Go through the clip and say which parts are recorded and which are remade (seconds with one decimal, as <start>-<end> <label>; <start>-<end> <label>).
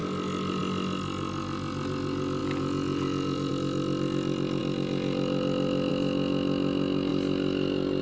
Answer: 0.0-2.4 recorded; 2.4-3.5 remade; 3.5-8.0 recorded